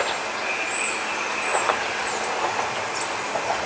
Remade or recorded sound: recorded